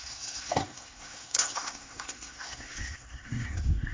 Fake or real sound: fake